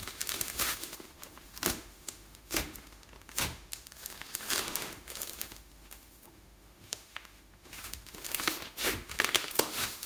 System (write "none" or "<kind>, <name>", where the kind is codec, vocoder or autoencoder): autoencoder, DAC-VAE